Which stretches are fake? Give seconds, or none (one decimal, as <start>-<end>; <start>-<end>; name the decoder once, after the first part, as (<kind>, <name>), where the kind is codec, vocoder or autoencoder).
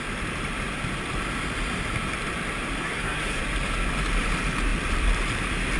2.8-3.4 (codec, SNAC)